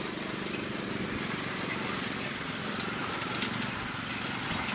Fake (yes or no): no